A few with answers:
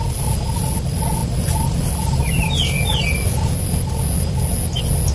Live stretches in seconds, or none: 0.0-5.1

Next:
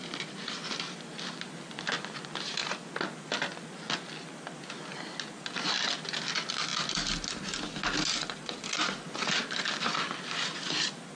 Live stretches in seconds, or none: 0.0-11.2

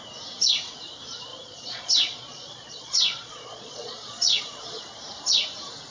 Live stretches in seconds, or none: 0.0-1.3; 4.8-5.9